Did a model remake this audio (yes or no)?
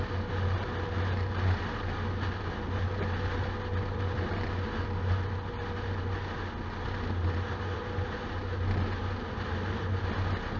no